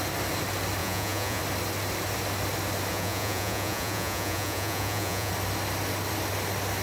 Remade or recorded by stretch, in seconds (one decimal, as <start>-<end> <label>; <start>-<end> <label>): 0.0-0.8 recorded; 0.8-1.4 remade; 1.4-2.9 recorded; 2.9-5.3 remade; 5.3-6.8 recorded